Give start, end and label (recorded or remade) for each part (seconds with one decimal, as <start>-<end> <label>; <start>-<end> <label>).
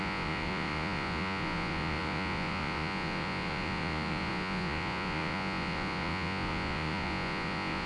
0.0-7.9 remade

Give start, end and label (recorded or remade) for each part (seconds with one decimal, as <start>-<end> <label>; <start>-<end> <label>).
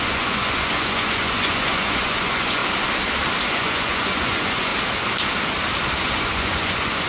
0.0-2.6 remade; 2.6-3.5 recorded; 3.5-4.7 remade; 4.7-6.0 recorded; 6.0-7.1 remade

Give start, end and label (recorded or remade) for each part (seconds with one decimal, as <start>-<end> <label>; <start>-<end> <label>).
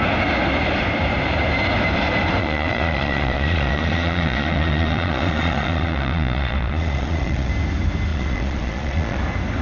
0.0-2.4 recorded; 2.4-7.5 remade; 7.5-8.1 recorded; 8.1-9.2 remade; 9.2-9.6 recorded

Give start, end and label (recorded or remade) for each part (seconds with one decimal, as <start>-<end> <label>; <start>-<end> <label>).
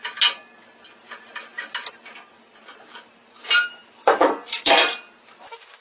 0.0-2.1 recorded; 2.1-5.8 remade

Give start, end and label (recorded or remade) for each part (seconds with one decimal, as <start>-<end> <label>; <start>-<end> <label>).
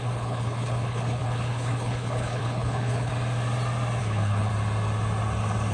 0.0-3.1 remade; 3.1-4.0 recorded; 4.0-4.5 remade; 4.5-5.7 recorded